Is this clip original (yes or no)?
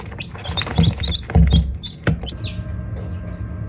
yes